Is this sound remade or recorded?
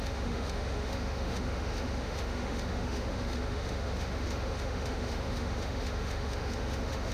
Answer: remade